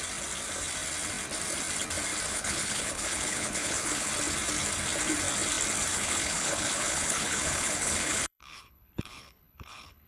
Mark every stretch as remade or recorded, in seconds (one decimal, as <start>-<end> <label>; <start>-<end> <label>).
0.0-2.3 recorded; 2.3-4.1 remade; 4.1-5.9 recorded; 5.9-10.1 remade